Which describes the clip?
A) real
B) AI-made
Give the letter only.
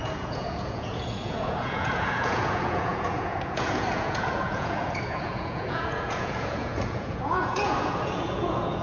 B